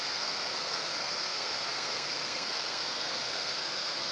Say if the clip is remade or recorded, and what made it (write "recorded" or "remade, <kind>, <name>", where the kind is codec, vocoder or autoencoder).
remade, codec, SNAC